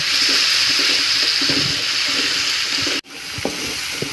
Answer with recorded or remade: recorded